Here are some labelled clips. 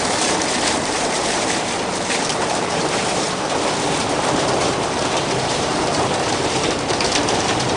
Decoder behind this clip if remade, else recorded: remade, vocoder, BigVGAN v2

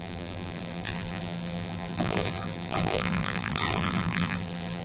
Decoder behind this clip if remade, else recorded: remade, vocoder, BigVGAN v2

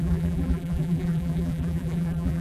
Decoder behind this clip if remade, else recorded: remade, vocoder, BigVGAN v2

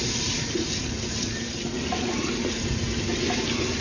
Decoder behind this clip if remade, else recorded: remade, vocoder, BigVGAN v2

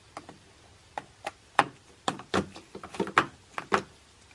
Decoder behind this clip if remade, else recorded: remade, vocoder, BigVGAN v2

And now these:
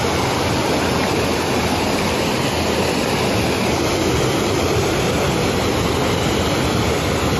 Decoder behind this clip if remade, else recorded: recorded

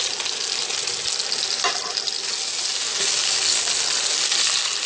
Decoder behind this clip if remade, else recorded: recorded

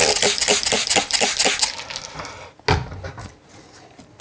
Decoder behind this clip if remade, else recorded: recorded